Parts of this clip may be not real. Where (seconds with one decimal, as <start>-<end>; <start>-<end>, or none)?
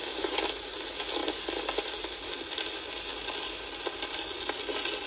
none